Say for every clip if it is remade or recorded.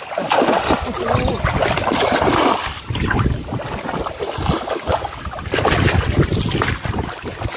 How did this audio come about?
recorded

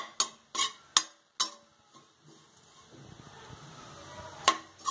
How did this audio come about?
recorded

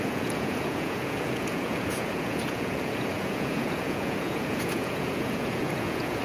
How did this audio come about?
remade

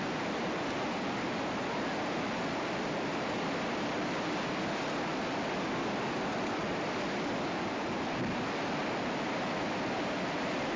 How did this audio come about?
recorded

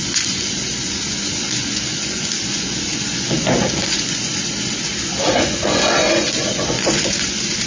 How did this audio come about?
remade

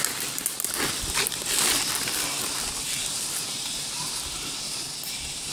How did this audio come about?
recorded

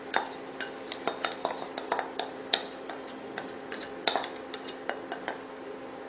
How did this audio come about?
recorded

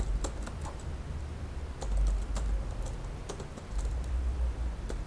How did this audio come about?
recorded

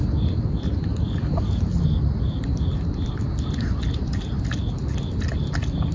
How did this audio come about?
recorded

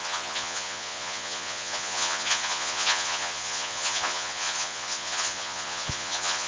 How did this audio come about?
remade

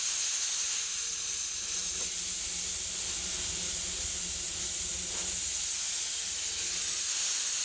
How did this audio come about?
recorded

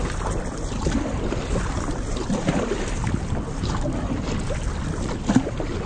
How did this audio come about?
recorded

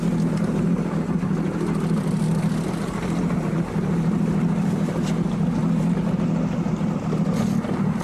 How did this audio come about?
recorded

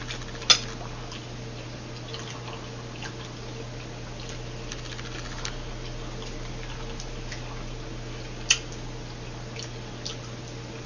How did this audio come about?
recorded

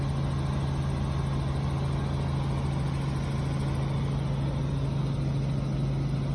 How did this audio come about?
recorded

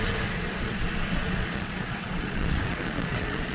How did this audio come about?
remade